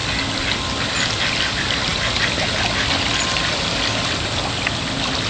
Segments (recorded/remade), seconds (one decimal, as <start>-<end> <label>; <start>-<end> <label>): 0.0-5.3 recorded